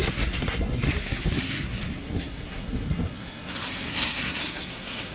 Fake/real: fake